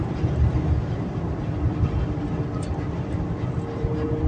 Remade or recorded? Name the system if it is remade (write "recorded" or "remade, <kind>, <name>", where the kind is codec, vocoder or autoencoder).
recorded